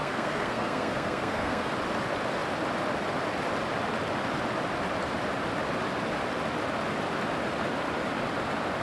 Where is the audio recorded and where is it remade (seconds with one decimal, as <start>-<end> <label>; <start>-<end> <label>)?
0.0-1.7 remade; 1.7-8.8 recorded